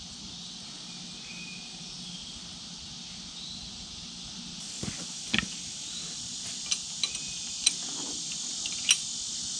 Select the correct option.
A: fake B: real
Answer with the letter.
B